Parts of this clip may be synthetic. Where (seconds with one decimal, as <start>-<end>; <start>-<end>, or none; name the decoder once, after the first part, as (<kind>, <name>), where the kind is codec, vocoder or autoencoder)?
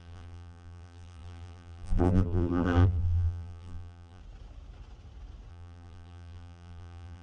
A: 0.0-4.2 (vocoder, BigVGAN v2); 5.5-7.2